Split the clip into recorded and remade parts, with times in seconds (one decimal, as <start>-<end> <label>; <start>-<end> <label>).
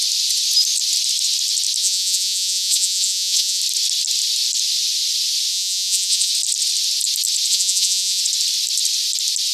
0.0-1.8 recorded; 1.8-3.6 remade; 3.6-5.5 recorded; 5.5-6.3 remade; 6.3-7.5 recorded; 7.5-8.2 remade; 8.2-9.5 recorded